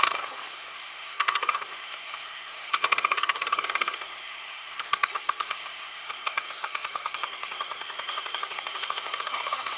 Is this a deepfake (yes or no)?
yes